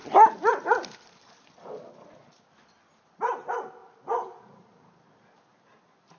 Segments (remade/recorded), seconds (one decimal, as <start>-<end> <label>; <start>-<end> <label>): 0.0-6.2 recorded